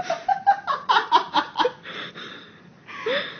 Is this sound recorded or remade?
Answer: recorded